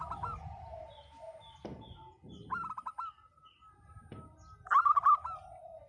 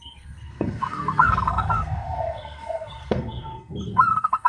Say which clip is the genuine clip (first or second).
first